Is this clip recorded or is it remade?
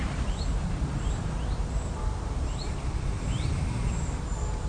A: remade